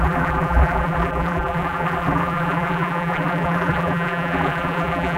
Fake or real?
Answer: fake